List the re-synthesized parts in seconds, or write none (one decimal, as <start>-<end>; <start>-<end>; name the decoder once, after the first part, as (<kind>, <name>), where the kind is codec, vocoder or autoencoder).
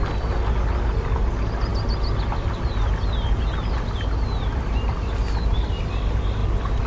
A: none